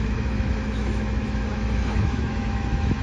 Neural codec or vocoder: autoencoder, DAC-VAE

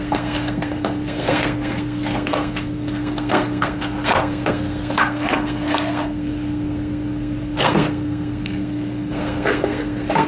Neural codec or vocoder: codec, SNAC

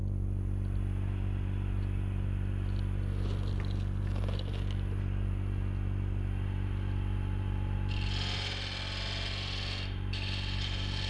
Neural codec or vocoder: none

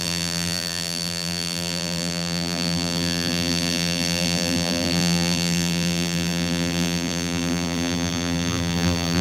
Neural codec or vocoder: vocoder, BigVGAN v2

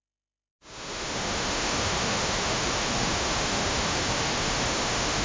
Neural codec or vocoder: autoencoder, DAC-VAE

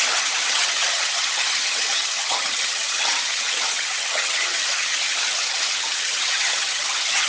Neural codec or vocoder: vocoder, HiFi-GAN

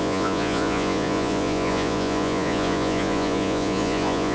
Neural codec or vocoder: vocoder, Vocos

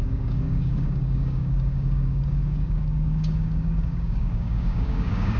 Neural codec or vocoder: codec, DAC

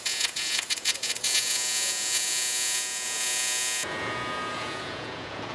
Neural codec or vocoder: vocoder, Vocos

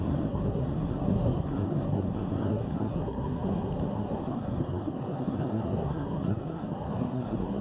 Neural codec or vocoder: codec, SNAC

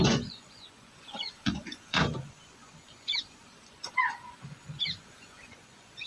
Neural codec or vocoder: vocoder, Vocos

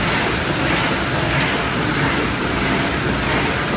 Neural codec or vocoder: none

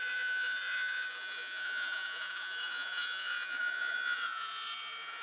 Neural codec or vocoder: vocoder, Vocos